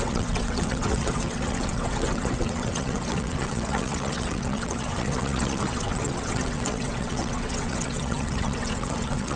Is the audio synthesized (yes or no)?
yes